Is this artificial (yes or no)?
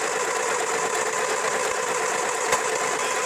no